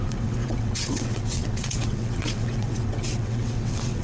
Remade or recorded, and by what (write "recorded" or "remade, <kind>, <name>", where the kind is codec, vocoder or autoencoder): remade, vocoder, WaveNeXt